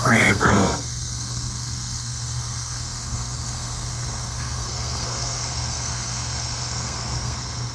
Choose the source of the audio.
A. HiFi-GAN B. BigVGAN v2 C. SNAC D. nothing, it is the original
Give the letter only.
C